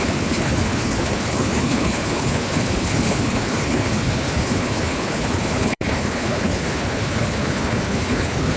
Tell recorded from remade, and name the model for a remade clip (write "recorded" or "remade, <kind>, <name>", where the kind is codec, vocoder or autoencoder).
remade, codec, HILCodec